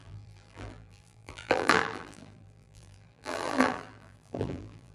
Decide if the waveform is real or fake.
fake